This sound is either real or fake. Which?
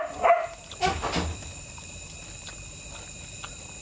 real